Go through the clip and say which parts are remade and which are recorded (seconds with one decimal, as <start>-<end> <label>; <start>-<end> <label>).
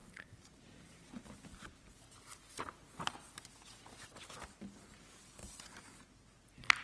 0.0-1.3 remade; 1.3-6.8 recorded